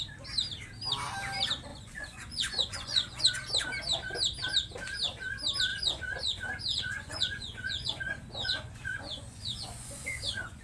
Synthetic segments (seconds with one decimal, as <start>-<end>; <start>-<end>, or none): 1.7-3.2; 5.7-10.6